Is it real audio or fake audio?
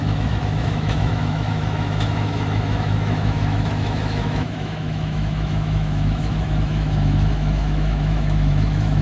fake